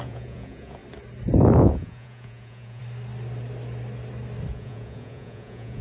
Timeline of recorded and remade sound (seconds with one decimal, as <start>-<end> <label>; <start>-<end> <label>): 0.0-0.8 remade; 0.8-1.6 recorded; 1.6-2.8 remade; 2.8-4.5 recorded; 4.5-5.8 remade